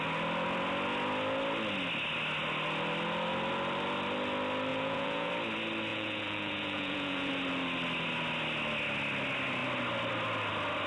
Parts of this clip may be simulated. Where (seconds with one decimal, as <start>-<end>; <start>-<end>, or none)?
4.7-5.3; 5.9-7.3